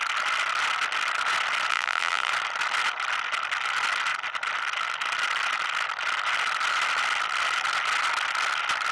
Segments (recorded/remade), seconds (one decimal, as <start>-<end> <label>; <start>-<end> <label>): 0.0-1.7 recorded; 1.7-2.3 remade; 2.3-8.9 recorded